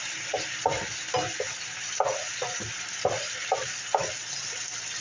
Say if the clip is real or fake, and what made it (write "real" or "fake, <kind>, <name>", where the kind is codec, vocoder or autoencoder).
real